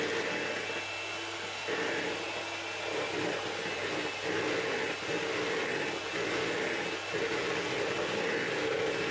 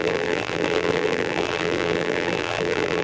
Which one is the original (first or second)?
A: first